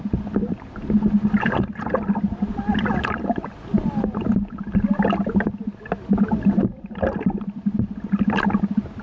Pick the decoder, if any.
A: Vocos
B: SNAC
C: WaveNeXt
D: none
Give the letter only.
D